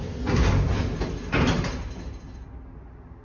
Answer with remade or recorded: recorded